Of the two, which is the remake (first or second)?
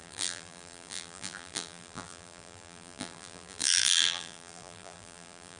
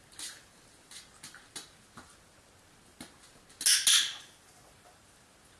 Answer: first